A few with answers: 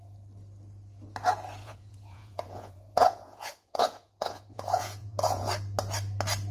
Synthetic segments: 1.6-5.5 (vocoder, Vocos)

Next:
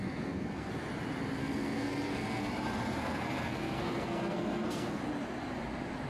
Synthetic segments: 0.0-0.7 (codec, SNAC); 1.4-2.5; 3.0-5.0

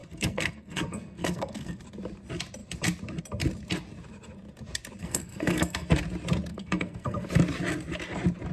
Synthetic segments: 0.0-1.8 (codec, SNAC); 5.0-6.0; 6.5-7.3

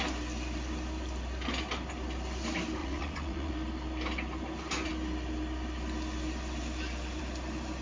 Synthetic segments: 2.8-3.5 (vocoder, Vocos)

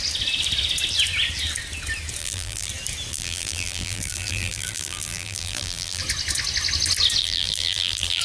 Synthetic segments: 2.2-2.7 (vocoder, BigVGAN v2); 3.1-6.0; 7.2-8.2